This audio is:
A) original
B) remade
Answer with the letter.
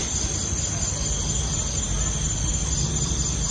A